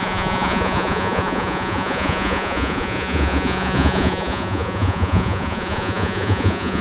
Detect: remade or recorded remade